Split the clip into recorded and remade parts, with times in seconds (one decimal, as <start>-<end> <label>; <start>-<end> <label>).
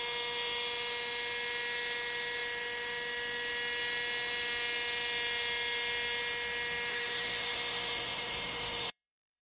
0.0-6.9 recorded; 6.9-9.4 remade